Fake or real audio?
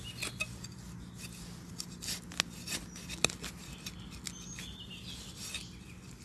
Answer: real